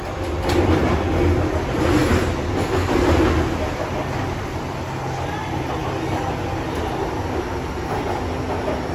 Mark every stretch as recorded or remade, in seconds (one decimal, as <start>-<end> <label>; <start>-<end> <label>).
0.0-8.9 recorded